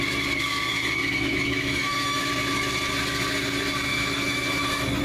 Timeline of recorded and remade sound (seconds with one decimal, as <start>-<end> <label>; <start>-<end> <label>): 0.0-1.0 recorded; 1.0-2.3 remade; 2.3-3.9 recorded; 3.9-5.0 remade